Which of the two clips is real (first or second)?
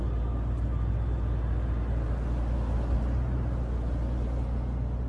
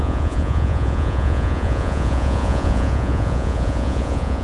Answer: first